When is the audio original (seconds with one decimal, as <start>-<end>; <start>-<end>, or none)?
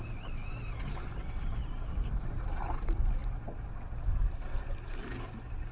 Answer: 0.0-5.7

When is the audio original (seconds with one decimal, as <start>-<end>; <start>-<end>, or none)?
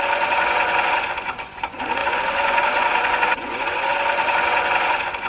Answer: none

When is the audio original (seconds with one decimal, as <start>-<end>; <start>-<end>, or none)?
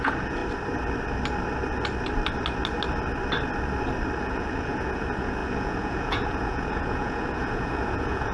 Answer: 0.4-4.2